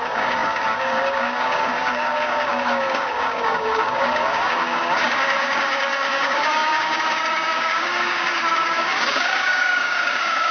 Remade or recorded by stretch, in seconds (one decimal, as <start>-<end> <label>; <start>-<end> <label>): 0.0-10.5 remade